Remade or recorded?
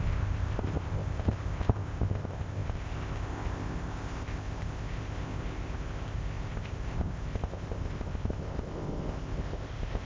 remade